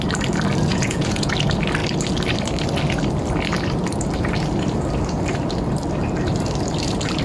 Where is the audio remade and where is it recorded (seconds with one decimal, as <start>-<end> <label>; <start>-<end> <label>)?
0.0-0.7 recorded; 0.7-1.3 remade; 1.3-7.2 recorded